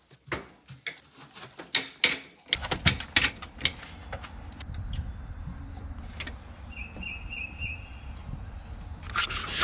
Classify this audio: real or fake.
real